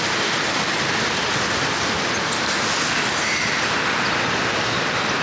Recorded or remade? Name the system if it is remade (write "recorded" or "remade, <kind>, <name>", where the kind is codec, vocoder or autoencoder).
recorded